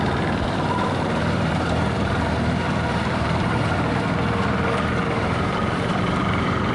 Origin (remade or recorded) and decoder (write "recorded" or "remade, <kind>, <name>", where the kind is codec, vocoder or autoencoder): remade, vocoder, BigVGAN v2